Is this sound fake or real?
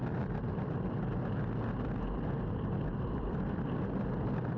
real